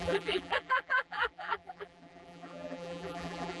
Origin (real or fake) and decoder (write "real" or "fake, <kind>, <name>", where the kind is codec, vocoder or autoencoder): fake, vocoder, BigVGAN v2